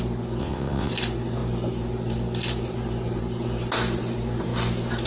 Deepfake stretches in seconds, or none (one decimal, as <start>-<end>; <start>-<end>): 0.4-0.9